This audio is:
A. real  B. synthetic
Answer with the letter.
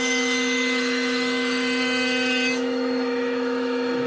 B